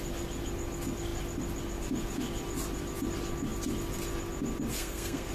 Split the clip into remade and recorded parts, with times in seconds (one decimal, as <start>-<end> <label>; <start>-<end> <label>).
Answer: 0.0-4.7 recorded; 4.7-5.3 remade